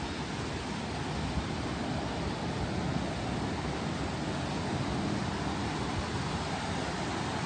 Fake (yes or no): no